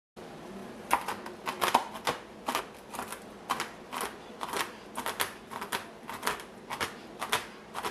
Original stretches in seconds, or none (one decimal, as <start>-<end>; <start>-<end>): 0.0-7.9